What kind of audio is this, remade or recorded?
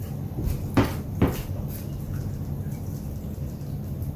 recorded